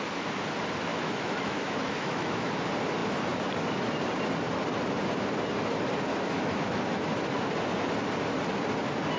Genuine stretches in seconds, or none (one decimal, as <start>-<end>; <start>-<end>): 0.0-0.9; 2.5-6.1; 6.8-9.2